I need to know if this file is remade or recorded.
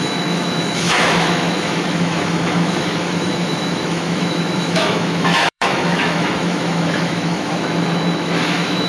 remade